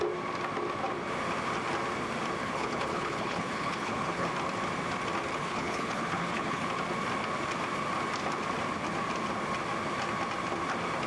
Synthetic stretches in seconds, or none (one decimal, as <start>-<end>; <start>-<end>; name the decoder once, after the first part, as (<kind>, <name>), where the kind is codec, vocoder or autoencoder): 2.4-4.3 (codec, HILCodec); 5.3-6.6